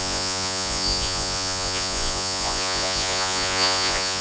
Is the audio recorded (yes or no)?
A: no